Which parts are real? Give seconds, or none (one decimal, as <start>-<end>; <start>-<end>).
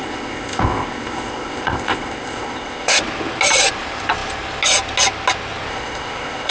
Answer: 3.0-5.7